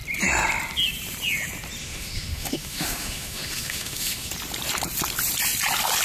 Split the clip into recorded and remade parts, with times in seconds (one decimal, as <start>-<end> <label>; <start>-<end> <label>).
0.0-1.8 recorded; 1.8-4.3 remade; 4.3-6.0 recorded